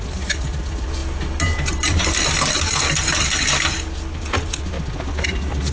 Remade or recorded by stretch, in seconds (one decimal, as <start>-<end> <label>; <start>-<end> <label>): 0.0-5.7 recorded